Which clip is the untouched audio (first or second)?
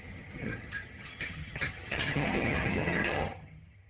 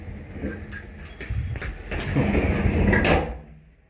second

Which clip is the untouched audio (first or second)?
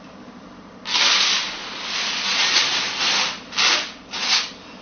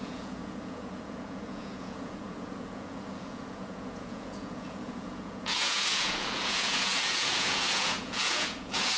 first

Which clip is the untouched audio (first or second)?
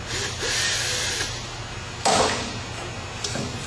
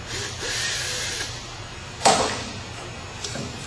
first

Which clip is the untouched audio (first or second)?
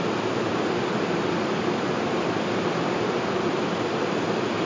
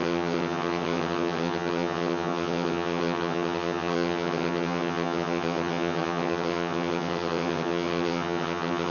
first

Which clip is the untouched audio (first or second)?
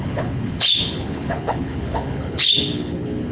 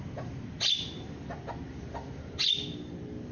second